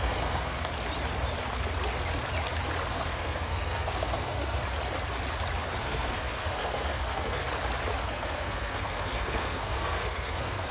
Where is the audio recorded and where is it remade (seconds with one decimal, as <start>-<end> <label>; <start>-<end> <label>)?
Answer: 0.0-0.7 remade; 0.7-2.9 recorded; 2.9-4.6 remade; 4.6-5.8 recorded; 5.8-7.4 remade; 7.4-8.0 recorded; 8.0-10.7 remade